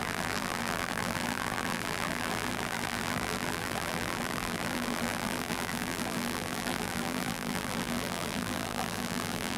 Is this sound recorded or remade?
remade